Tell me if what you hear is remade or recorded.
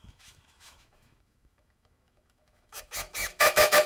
remade